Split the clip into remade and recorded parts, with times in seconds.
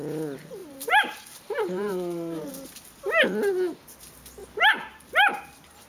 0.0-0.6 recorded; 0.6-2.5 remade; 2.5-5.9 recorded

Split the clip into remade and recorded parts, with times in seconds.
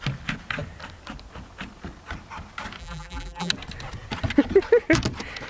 0.0-2.8 recorded; 2.8-3.5 remade; 3.5-5.5 recorded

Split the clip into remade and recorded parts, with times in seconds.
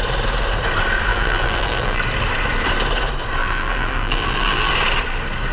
0.0-1.1 recorded; 1.1-2.0 remade; 2.0-3.4 recorded; 3.4-4.7 remade; 4.7-5.5 recorded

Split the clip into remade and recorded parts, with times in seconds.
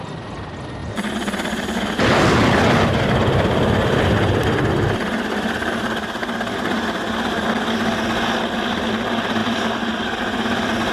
0.0-0.8 remade; 0.8-3.0 recorded; 3.0-6.2 remade; 6.2-8.9 recorded; 8.9-10.9 remade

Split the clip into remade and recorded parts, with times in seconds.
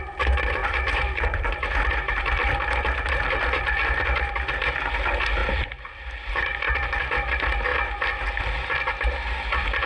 0.0-0.6 recorded; 0.6-2.3 remade; 2.3-5.4 recorded; 5.4-6.3 remade; 6.3-9.9 recorded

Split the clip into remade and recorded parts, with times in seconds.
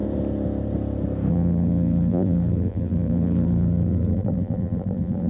0.0-1.3 recorded; 1.3-5.3 remade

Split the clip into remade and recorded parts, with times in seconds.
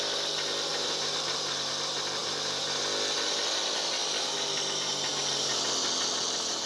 0.0-0.7 recorded; 0.7-1.7 remade; 1.7-2.2 recorded; 2.2-2.8 remade; 2.8-6.7 recorded